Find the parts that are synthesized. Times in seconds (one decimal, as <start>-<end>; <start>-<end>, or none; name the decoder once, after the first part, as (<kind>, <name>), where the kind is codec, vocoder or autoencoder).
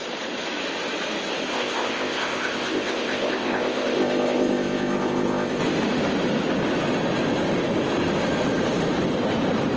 1.5-5.6 (codec, ZipCodec)